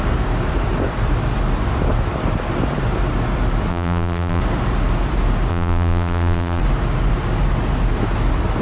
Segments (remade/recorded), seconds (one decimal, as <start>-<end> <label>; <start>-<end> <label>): 0.0-3.7 recorded; 3.7-4.4 remade; 4.4-5.5 recorded; 5.5-6.6 remade; 6.6-8.6 recorded